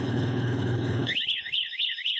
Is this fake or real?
fake